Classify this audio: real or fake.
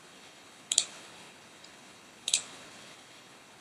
fake